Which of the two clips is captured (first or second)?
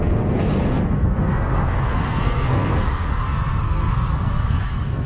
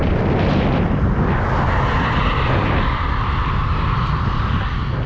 second